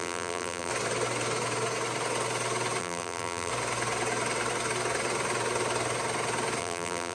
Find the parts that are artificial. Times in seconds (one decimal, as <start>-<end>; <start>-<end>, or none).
0.0-0.7; 2.8-3.5; 6.6-7.1